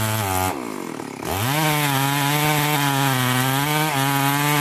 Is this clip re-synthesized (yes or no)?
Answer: no